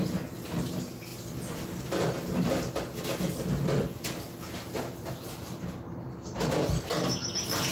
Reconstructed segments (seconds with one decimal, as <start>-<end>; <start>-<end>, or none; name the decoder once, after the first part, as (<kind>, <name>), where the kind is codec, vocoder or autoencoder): none